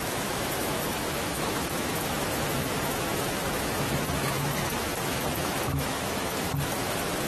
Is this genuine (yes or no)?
no